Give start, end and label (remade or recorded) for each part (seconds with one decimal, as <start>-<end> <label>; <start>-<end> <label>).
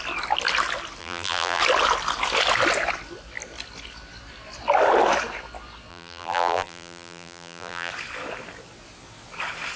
0.0-1.0 recorded; 1.0-1.6 remade; 1.6-5.9 recorded; 5.9-7.9 remade; 7.9-9.8 recorded